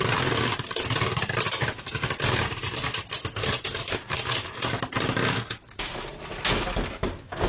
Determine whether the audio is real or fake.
real